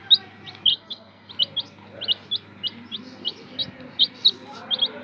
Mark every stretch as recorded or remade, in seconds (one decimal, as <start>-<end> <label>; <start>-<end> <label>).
0.0-0.7 recorded; 0.7-1.3 remade; 1.3-5.0 recorded